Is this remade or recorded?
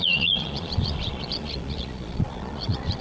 remade